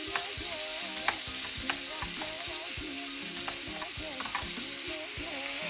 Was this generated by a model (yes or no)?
no